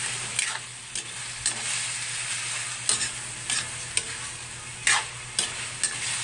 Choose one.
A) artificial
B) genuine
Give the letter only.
B